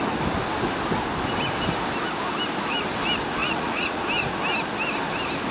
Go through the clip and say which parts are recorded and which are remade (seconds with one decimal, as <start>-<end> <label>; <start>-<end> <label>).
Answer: 0.0-3.4 recorded; 3.4-4.0 remade; 4.0-5.5 recorded